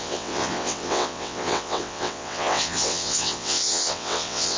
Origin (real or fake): fake